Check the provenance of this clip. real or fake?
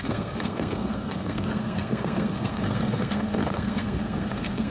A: fake